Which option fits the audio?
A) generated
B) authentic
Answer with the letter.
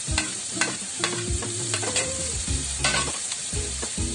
A